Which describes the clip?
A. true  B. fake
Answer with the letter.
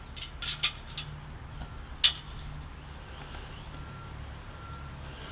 A